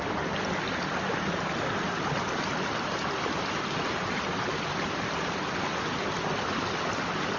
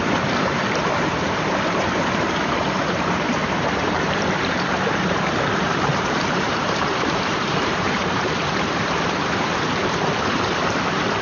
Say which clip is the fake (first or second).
second